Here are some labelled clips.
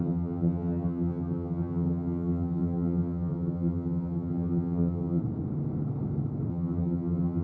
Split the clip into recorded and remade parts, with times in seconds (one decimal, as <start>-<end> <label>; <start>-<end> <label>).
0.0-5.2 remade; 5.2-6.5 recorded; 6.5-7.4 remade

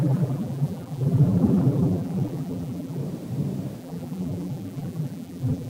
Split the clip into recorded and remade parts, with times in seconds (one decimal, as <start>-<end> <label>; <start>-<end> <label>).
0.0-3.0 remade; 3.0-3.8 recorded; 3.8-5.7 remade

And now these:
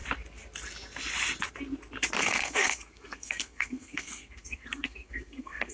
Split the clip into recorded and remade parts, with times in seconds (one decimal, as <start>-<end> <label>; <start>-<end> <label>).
0.0-2.2 recorded; 2.2-5.7 remade

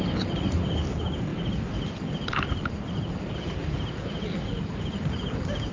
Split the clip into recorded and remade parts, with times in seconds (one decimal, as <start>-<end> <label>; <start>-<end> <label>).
0.0-5.7 recorded